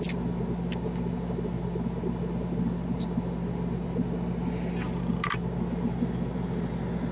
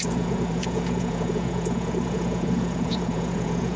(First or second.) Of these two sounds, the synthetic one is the second